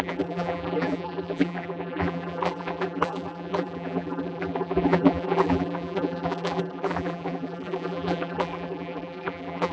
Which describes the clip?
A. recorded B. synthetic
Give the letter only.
B